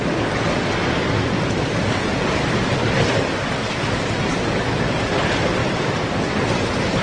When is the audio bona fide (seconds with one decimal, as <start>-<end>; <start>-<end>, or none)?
none